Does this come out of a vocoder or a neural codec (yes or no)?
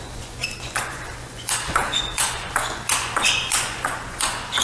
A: yes